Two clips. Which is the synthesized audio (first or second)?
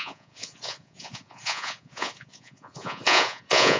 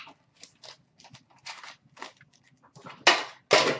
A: first